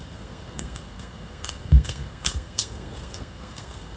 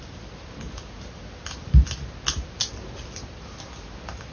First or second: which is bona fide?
second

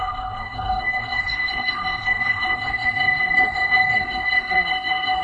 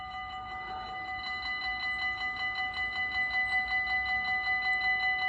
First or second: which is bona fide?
second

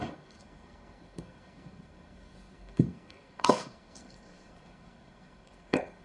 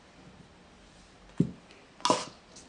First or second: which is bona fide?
second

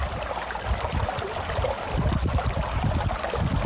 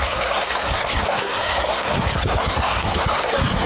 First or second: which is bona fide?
first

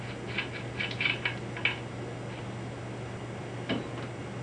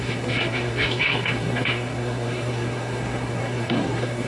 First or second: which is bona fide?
first